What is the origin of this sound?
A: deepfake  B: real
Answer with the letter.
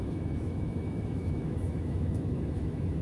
A